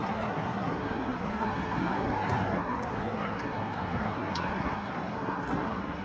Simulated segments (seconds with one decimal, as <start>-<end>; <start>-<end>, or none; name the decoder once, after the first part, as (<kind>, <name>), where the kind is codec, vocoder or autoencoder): 0.0-6.0 (codec, SNAC)